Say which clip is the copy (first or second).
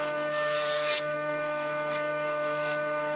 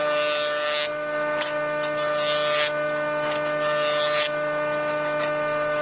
first